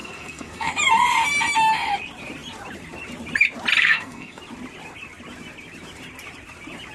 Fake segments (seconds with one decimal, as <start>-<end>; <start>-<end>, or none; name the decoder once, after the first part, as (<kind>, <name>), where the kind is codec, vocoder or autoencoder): 0.0-0.7 (codec, SNAC); 3.8-4.4